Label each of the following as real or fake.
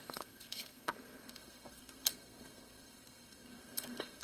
fake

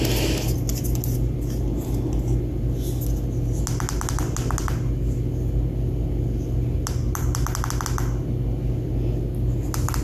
real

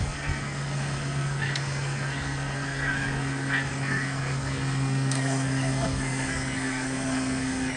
fake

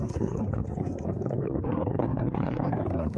fake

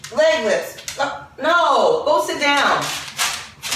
real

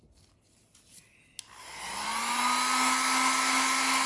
real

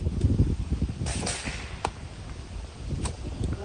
real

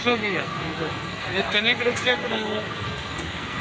fake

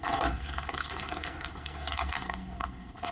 fake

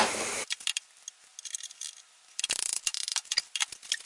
real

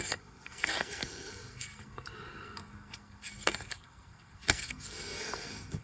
fake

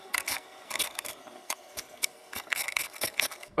fake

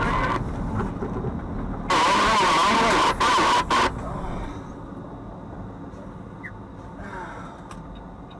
real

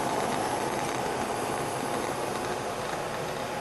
real